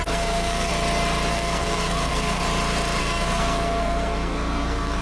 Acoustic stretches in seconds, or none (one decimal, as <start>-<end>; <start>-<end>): 0.7-1.3; 2.4-3.0

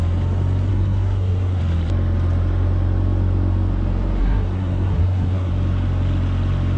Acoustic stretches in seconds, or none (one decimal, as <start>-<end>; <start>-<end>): 0.0-0.7; 1.6-4.2; 5.5-6.8

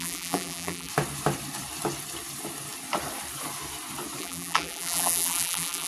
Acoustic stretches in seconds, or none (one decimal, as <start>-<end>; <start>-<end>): 0.9-4.2

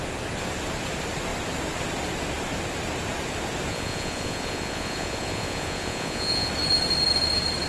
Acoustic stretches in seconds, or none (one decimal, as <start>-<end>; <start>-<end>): 0.0-3.7; 6.5-7.7